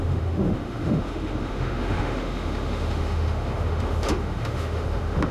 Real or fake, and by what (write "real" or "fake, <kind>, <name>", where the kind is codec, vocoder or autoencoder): fake, autoencoder, DAC-VAE